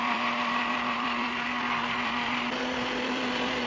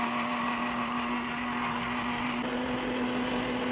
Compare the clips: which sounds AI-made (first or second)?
first